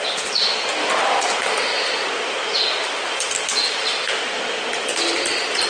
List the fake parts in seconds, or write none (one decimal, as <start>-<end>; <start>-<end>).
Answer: none